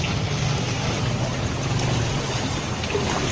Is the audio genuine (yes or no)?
yes